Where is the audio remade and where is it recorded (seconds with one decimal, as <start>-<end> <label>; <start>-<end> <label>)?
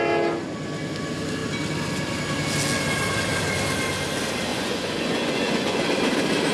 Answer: 0.0-4.5 recorded; 4.5-5.8 remade; 5.8-6.5 recorded